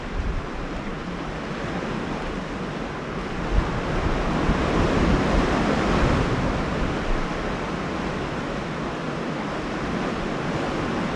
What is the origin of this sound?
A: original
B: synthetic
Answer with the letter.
A